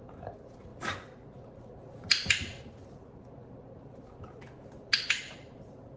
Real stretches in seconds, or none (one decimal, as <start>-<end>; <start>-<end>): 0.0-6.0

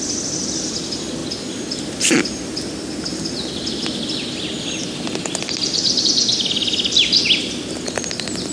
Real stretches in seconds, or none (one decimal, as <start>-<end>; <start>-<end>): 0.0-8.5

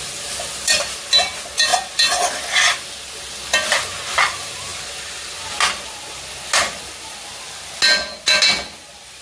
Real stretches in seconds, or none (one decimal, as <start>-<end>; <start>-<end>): 0.0-9.2

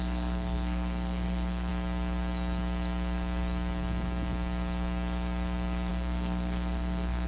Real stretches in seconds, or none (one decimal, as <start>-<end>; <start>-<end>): 1.7-5.9

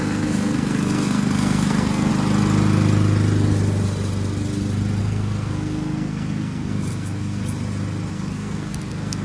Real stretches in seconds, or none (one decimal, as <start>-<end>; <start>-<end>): 2.1-5.0; 7.4-8.1

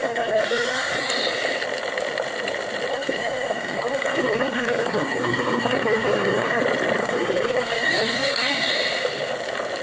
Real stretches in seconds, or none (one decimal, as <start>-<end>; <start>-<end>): 1.1-2.9; 6.6-7.0; 8.7-9.8